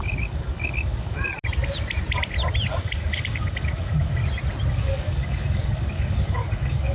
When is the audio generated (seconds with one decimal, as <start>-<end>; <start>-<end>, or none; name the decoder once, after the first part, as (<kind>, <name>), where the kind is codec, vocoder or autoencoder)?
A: 0.0-1.3 (codec, DAC); 2.8-4.2; 4.7-6.9